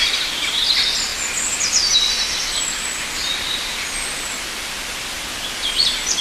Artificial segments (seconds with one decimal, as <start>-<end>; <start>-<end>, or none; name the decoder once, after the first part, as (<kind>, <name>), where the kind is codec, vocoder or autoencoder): none